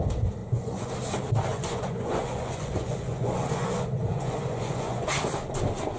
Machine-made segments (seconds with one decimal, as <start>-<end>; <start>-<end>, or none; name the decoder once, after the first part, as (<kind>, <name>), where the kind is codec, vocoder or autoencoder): 0.4-0.9 (vocoder, Vocos); 1.5-5.1